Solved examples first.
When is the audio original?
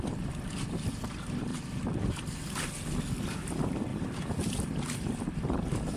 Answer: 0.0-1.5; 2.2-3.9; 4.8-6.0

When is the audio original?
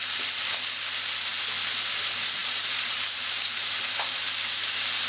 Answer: 0.0-2.4; 4.3-5.1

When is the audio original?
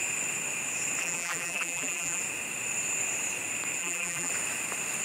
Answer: 0.0-1.0; 2.2-3.8; 4.3-5.0